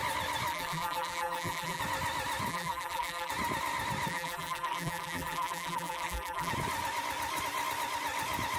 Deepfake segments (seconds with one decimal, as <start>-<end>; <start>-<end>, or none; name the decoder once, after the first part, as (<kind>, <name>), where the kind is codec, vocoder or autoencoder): 0.5-1.8 (vocoder, BigVGAN v2); 2.5-3.3; 4.1-6.5